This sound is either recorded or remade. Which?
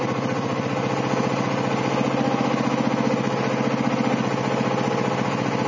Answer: recorded